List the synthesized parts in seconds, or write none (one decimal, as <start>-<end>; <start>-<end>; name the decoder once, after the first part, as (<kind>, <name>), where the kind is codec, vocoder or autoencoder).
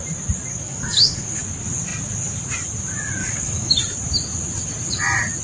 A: 0.5-1.4 (codec, DAC); 3.2-3.7